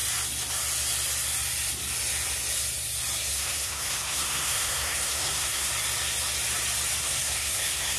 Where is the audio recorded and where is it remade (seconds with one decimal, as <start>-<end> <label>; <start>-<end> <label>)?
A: 0.0-3.3 recorded; 3.3-5.7 remade; 5.7-7.0 recorded; 7.0-8.0 remade